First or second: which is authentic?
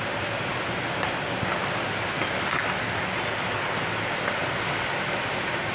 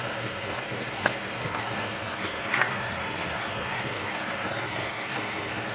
first